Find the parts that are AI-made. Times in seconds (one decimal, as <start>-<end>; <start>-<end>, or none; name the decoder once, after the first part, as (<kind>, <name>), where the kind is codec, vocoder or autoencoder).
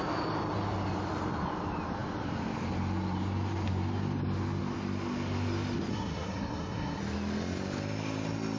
5.9-7.0 (codec, SNAC)